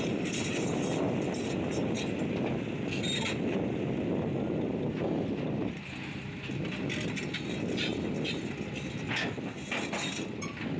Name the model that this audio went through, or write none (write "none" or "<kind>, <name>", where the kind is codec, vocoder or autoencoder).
none